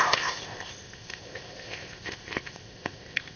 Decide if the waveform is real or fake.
fake